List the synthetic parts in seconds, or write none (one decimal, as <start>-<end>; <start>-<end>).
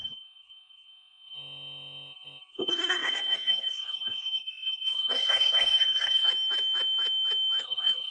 0.0-6.3; 7.6-8.1